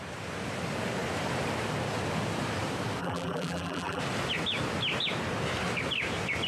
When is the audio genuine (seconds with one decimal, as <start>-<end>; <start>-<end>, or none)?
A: 0.0-3.0; 4.0-6.5

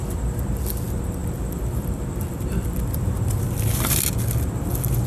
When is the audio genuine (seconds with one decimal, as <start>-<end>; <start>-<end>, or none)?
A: 0.0-1.2; 3.9-5.1

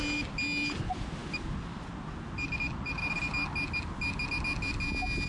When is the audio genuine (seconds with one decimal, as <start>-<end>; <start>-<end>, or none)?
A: 0.0-5.3